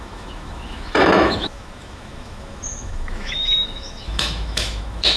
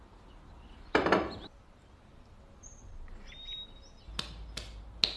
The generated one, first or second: first